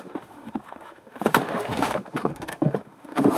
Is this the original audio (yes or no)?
no